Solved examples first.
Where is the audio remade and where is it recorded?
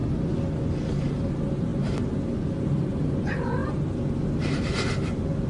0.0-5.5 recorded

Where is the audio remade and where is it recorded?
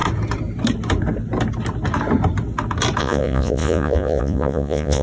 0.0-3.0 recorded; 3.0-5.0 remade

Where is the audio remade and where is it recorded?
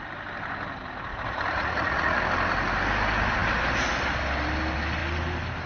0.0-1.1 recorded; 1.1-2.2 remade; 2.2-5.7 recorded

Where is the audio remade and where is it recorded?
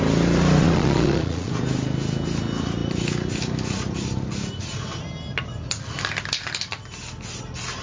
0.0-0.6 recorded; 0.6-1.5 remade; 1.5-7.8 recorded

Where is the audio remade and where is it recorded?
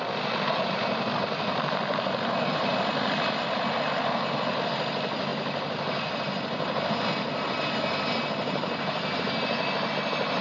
0.0-10.4 recorded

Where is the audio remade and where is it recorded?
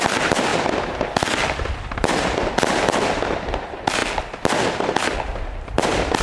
0.0-6.2 recorded